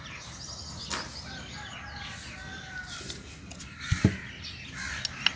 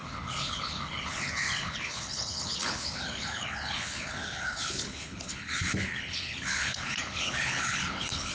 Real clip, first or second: first